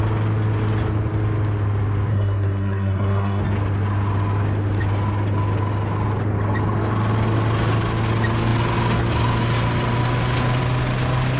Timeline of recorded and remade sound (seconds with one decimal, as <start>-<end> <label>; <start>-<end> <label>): 0.0-2.1 recorded; 2.1-3.4 remade; 3.4-11.4 recorded